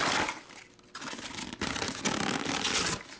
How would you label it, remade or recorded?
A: recorded